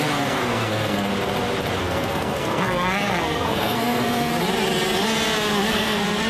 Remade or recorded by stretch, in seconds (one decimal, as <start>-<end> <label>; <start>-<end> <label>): 0.0-1.1 remade; 1.1-1.8 recorded; 1.8-4.3 remade; 4.3-5.7 recorded; 5.7-6.3 remade